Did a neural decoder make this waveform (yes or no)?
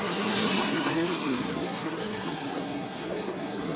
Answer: yes